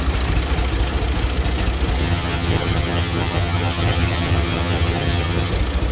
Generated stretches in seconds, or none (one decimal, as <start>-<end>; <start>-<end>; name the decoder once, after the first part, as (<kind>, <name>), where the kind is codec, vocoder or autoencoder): 2.0-5.5 (vocoder, HiFi-GAN)